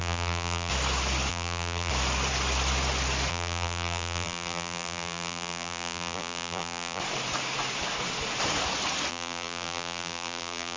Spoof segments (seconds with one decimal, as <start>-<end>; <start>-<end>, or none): 0.0-0.7; 1.3-1.9; 3.3-7.0; 9.1-10.8